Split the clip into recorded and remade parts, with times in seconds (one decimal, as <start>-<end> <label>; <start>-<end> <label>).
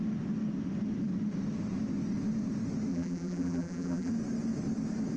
0.0-2.9 recorded; 2.9-4.1 remade; 4.1-5.2 recorded